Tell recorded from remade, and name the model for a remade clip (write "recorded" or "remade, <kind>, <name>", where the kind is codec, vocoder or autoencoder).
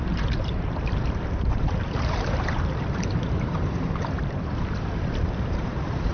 remade, vocoder, BigVGAN v2